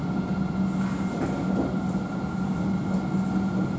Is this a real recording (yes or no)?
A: yes